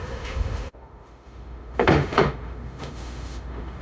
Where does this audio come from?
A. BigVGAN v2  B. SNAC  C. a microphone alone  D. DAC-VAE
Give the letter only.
D